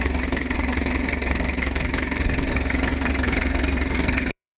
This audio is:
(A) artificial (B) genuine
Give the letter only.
A